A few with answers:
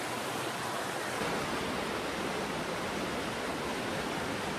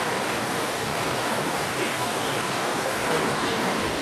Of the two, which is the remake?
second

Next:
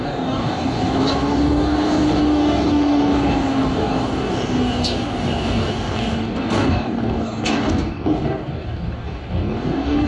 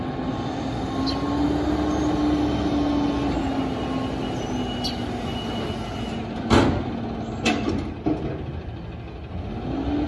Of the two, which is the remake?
first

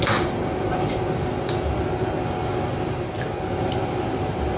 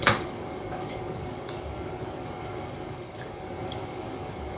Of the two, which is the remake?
second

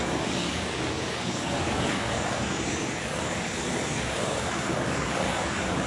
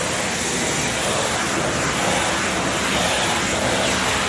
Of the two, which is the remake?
first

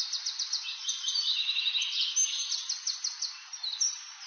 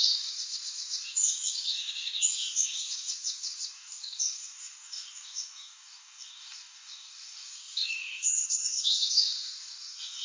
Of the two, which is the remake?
second